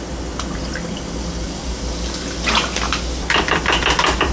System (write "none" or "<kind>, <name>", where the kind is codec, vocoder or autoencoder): none